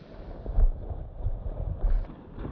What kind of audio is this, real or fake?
real